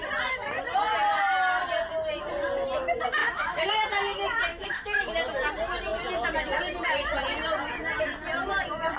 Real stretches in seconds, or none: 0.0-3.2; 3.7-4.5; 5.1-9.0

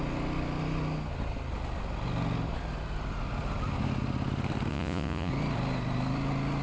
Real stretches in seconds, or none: 0.0-4.7; 5.3-6.6

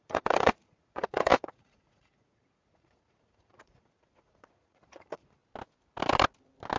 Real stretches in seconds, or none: 5.4-6.8